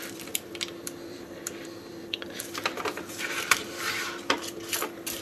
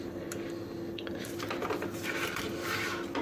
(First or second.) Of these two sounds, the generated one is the first